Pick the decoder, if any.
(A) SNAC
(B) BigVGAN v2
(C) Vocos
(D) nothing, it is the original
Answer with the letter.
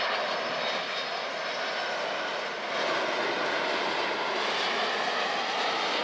D